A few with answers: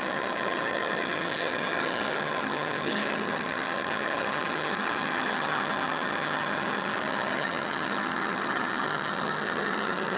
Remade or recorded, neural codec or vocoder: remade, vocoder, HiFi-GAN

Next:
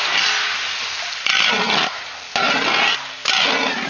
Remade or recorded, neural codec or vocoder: recorded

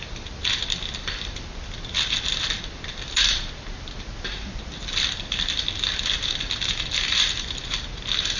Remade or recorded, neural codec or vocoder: recorded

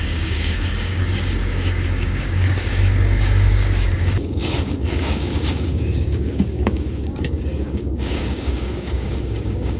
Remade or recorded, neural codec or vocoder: remade, codec, DAC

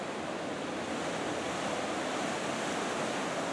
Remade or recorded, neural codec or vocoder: recorded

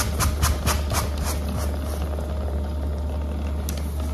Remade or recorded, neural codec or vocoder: recorded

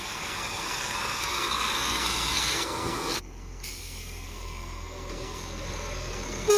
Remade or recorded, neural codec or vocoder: remade, codec, SNAC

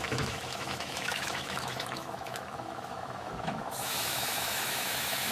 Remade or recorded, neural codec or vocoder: remade, autoencoder, DAC-VAE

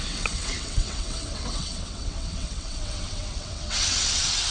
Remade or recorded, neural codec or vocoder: remade, vocoder, WaveNeXt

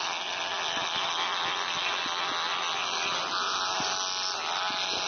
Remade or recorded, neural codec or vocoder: recorded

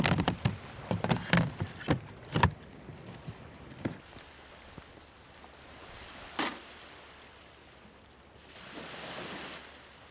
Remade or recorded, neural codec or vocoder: recorded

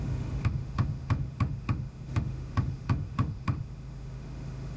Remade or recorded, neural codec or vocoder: remade, autoencoder, DAC-VAE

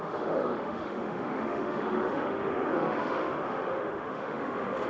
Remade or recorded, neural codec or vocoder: remade, autoencoder, DAC-VAE